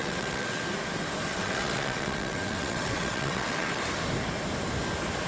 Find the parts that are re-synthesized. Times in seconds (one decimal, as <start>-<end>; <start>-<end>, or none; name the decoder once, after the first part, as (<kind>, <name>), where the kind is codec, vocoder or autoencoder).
0.0-0.6 (vocoder, WaveNeXt); 1.3-3.8